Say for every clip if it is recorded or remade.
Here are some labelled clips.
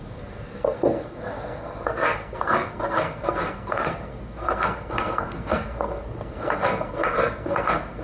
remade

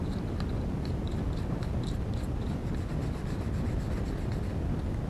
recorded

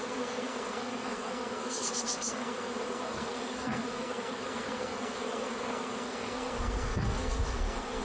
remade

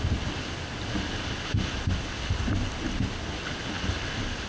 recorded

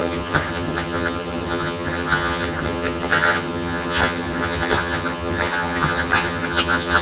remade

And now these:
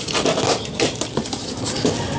recorded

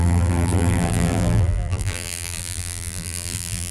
remade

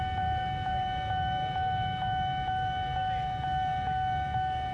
recorded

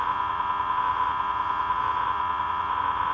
remade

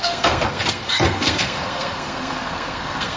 remade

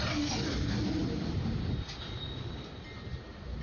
recorded